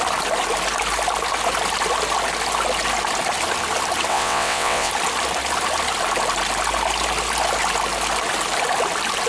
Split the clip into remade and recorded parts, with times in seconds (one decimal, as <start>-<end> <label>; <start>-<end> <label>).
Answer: 0.0-4.1 recorded; 4.1-4.9 remade; 4.9-9.3 recorded